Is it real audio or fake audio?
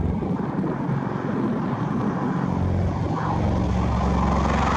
real